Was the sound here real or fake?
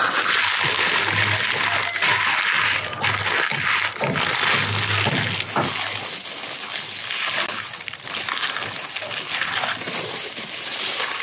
real